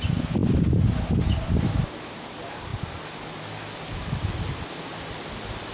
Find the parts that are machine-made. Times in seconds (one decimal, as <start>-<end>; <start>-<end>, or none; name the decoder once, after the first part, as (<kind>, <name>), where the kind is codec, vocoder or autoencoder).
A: none